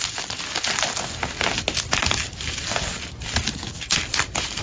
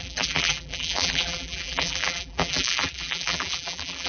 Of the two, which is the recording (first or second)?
first